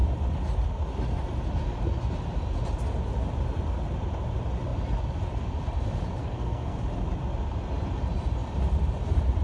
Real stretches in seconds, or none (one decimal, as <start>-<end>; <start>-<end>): 0.0-6.2; 6.8-9.4